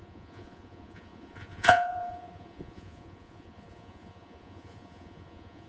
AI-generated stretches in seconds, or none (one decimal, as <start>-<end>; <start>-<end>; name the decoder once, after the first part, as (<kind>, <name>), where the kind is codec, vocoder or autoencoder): 0.0-5.7 (vocoder, Vocos)